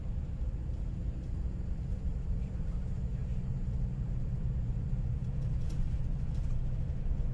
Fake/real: fake